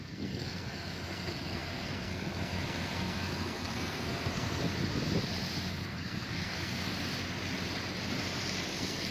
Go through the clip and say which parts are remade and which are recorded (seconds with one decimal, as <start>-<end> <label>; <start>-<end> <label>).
0.0-4.7 remade; 4.7-5.7 recorded; 5.7-6.9 remade; 6.9-8.7 recorded; 8.7-9.1 remade